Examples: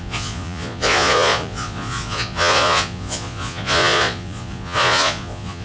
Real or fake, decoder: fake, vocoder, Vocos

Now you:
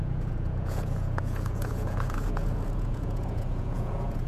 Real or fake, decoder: fake, vocoder, Vocos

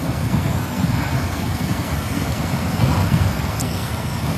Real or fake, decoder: fake, codec, SNAC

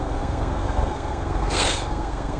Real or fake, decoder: fake, codec, SNAC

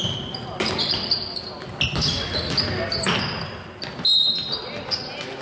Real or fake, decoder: real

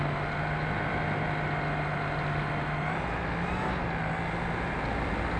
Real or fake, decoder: real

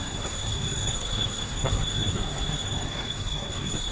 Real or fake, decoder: fake, codec, SNAC